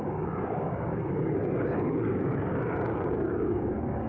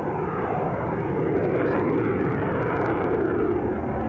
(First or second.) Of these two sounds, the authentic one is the second